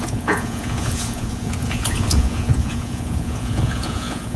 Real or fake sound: fake